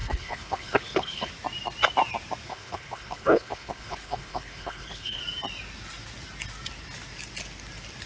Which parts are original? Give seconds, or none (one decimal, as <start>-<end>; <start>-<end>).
1.3-2.5; 5.2-8.1